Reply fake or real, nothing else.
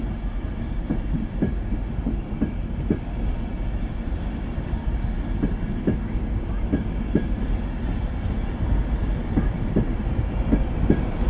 real